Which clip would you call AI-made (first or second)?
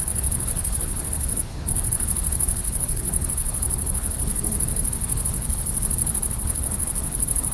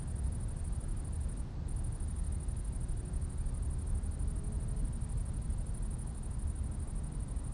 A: first